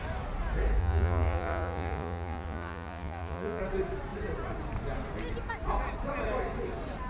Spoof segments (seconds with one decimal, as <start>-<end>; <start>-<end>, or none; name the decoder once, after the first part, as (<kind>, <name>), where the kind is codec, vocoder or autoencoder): 0.8-3.6 (vocoder, Vocos)